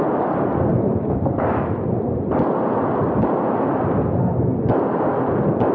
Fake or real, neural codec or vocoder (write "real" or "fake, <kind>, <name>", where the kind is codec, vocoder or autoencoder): real